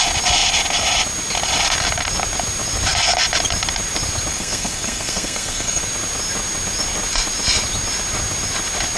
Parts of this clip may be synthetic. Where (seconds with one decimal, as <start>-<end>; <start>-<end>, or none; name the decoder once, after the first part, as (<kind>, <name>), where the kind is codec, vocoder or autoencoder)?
4.3-5.8 (codec, SNAC)